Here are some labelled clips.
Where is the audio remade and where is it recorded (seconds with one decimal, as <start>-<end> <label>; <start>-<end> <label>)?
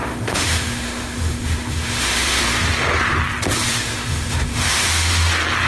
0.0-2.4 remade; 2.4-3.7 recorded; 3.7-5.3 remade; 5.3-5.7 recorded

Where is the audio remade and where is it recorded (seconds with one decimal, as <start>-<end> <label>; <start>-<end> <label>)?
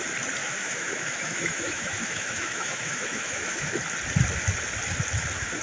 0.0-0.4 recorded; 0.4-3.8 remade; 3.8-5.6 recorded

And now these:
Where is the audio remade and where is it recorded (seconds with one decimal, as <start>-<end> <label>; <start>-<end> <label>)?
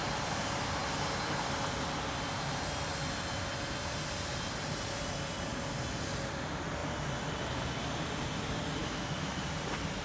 0.0-8.8 recorded; 8.8-9.4 remade; 9.4-10.0 recorded